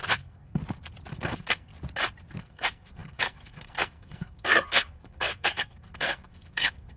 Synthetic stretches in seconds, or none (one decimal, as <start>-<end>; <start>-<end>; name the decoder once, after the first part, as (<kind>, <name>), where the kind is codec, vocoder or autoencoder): 0.0-0.6 (codec, SNAC); 1.1-1.7; 2.4-7.0